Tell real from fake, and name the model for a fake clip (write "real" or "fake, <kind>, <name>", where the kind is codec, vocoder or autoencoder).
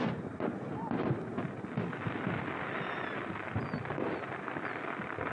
real